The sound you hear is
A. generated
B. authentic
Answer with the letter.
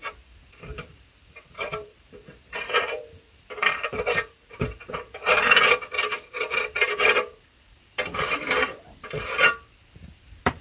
A